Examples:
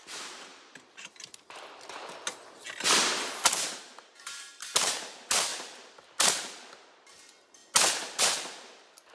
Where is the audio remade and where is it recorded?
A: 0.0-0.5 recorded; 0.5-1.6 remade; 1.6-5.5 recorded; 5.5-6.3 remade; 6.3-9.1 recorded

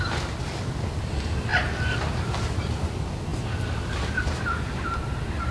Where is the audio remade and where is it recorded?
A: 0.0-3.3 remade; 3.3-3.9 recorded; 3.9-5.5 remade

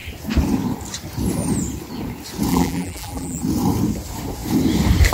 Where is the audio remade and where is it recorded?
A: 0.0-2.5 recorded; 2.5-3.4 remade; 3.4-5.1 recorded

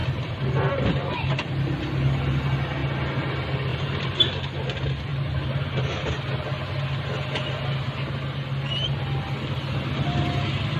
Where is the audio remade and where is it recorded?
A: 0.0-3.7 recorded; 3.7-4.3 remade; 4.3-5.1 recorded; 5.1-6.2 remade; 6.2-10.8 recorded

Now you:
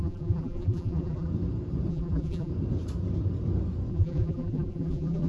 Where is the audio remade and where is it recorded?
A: 0.0-1.3 remade; 1.3-1.9 recorded; 1.9-2.5 remade; 2.5-3.9 recorded; 3.9-5.3 remade

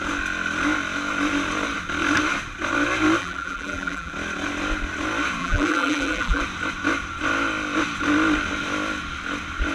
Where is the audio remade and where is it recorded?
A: 0.0-3.2 recorded; 3.2-4.1 remade; 4.1-5.4 recorded; 5.4-6.4 remade; 6.4-9.7 recorded

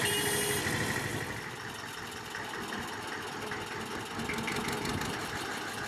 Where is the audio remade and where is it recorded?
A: 0.0-5.9 recorded

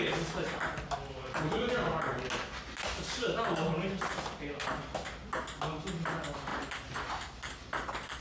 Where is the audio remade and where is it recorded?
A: 0.0-8.2 recorded